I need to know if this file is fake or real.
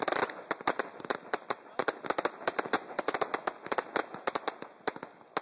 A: real